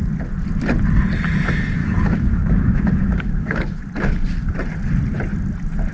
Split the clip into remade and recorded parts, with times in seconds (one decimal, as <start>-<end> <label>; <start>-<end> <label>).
0.0-1.8 recorded; 1.8-3.8 remade; 3.8-5.9 recorded